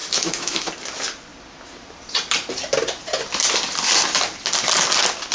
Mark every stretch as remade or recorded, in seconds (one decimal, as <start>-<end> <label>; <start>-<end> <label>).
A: 0.0-0.7 remade; 0.7-5.3 recorded